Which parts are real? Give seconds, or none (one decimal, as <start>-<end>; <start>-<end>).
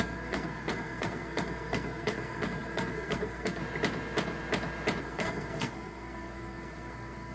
3.6-5.0